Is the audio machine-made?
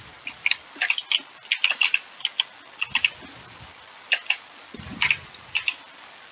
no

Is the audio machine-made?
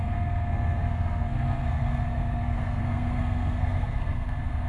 yes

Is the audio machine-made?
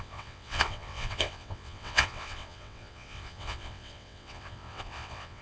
yes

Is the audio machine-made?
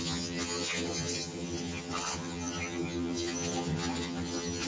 yes